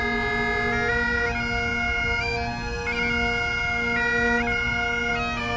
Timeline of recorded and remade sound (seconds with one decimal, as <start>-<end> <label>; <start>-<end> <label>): 0.0-5.6 recorded